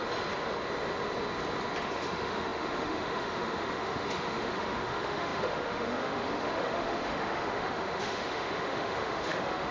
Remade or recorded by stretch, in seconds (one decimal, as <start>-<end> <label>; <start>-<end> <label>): 0.0-1.8 recorded; 1.8-9.7 remade